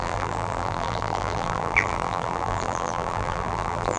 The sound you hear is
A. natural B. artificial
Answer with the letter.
B